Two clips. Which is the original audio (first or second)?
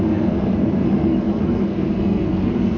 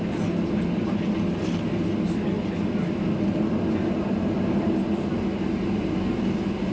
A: second